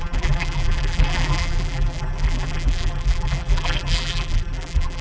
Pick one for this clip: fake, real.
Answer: fake